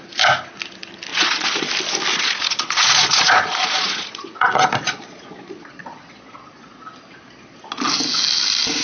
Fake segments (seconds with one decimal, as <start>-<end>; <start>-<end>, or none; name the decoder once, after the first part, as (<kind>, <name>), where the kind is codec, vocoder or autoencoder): 1.1-1.7 (vocoder, Vocos); 2.1-6.8